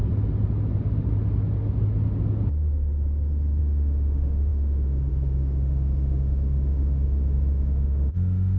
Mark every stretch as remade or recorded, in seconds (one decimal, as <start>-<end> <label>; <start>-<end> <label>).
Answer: 0.0-3.6 recorded; 3.6-8.6 remade